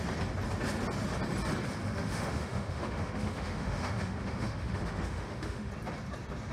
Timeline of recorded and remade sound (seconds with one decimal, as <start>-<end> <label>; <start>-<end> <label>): 0.0-1.8 recorded; 1.8-5.7 remade; 5.7-6.5 recorded